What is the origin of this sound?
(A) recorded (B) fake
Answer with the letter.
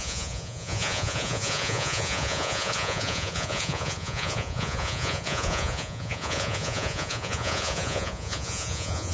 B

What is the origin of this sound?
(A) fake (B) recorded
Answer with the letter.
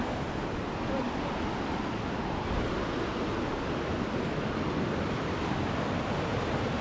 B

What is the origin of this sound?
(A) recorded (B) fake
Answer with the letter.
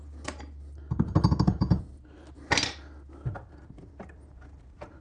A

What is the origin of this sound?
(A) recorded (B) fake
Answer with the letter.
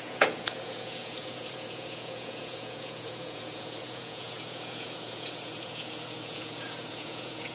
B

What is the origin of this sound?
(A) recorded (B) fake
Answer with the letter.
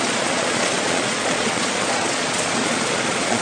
B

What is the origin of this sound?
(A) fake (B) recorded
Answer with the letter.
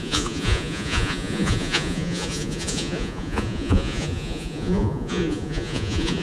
A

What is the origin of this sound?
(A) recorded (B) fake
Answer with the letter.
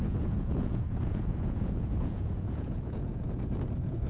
B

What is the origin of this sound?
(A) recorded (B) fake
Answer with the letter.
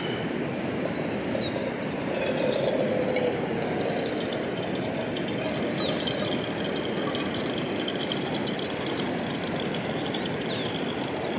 A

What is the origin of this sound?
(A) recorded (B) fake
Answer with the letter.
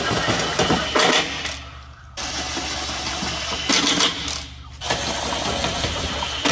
A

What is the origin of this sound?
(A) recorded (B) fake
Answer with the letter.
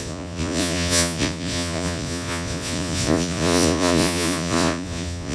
B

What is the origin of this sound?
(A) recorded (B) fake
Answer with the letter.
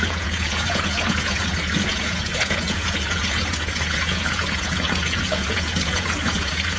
B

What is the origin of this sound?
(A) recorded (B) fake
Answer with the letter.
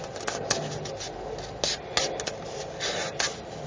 A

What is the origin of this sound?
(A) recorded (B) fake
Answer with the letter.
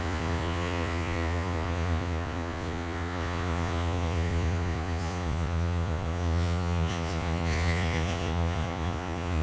B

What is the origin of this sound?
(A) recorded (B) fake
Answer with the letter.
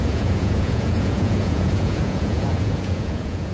B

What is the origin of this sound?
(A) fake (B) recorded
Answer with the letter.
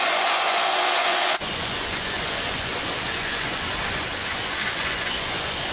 A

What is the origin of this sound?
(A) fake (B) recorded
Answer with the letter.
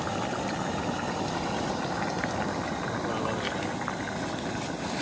B